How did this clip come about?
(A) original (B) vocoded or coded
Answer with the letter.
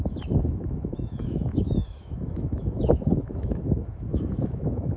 B